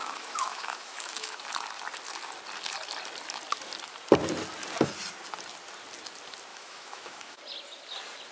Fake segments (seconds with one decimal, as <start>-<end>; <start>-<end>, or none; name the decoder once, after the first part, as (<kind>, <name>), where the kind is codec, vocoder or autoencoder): 0.0-1.4 (autoencoder, DAC-VAE); 6.5-7.4